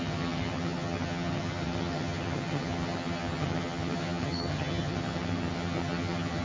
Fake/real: fake